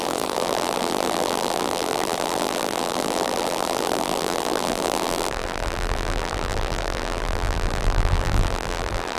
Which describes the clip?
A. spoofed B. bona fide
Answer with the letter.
A